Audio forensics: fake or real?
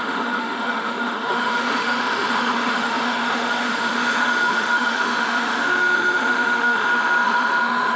fake